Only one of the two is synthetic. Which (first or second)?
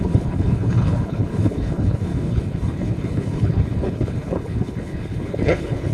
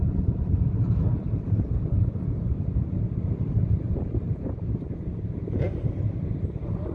first